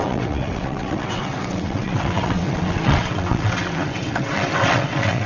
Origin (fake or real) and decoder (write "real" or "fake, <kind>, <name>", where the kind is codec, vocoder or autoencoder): fake, vocoder, WaveNeXt